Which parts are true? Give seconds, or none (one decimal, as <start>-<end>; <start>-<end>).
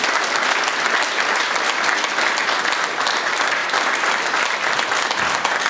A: 0.0-3.6; 4.8-5.7